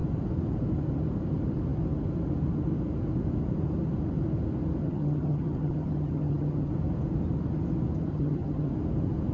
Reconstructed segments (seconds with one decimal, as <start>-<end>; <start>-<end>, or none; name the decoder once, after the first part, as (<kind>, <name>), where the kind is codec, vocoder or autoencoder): 4.8-6.7 (vocoder, HiFi-GAN); 8.1-8.7